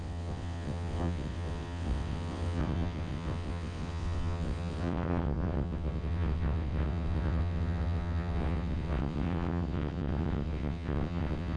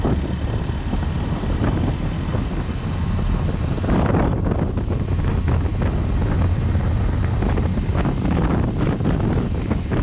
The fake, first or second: first